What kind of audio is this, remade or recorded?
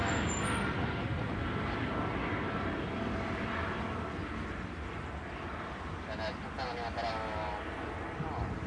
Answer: recorded